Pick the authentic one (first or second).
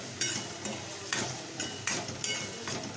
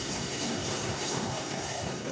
first